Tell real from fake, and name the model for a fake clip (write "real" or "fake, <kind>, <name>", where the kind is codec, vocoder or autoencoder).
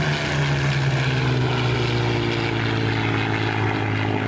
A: real